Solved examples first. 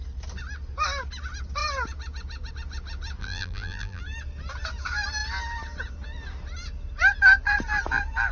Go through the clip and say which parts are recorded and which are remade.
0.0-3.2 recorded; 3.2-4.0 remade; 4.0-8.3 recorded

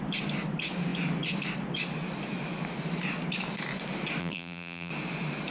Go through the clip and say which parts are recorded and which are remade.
0.0-4.2 recorded; 4.2-4.9 remade; 4.9-5.5 recorded

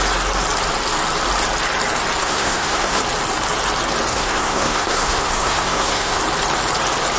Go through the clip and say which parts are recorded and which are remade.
0.0-2.2 recorded; 2.2-3.0 remade; 3.0-4.1 recorded; 4.1-6.2 remade; 6.2-7.2 recorded

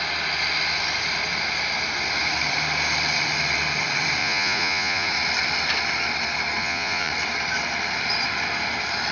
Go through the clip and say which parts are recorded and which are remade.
0.0-4.2 recorded; 4.2-5.1 remade; 5.1-6.6 recorded; 6.6-7.1 remade; 7.1-9.1 recorded

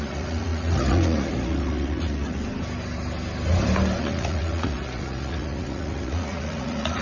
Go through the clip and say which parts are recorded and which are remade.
0.0-2.4 remade; 2.4-4.0 recorded; 4.0-7.0 remade

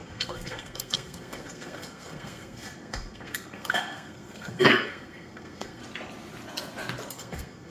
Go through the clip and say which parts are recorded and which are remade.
0.0-5.8 remade; 5.8-7.1 recorded; 7.1-7.7 remade

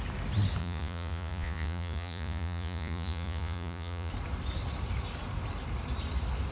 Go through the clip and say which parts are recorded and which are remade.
0.0-0.6 recorded; 0.6-4.1 remade; 4.1-6.5 recorded

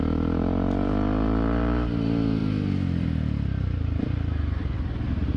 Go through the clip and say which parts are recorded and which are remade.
0.0-2.4 recorded; 2.4-4.0 remade; 4.0-5.4 recorded